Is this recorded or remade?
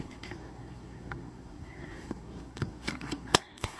remade